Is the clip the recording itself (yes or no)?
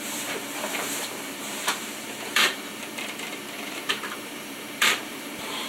no